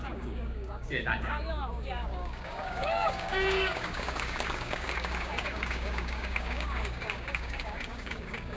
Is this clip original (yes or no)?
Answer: no